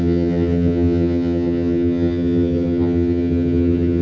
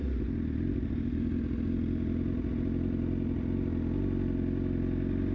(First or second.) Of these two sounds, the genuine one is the second